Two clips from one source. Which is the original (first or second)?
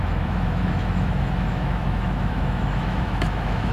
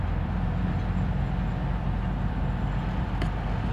second